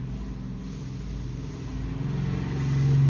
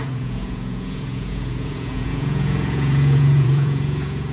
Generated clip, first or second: second